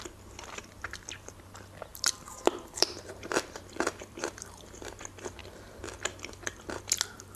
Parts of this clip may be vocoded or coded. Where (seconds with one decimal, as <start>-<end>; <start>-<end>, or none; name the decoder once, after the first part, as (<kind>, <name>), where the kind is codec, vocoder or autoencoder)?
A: 1.9-5.0 (vocoder, BigVGAN v2)